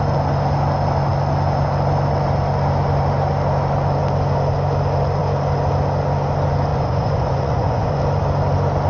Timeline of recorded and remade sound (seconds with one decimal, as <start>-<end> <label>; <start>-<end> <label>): 0.0-6.7 recorded; 6.7-8.0 remade; 8.0-8.9 recorded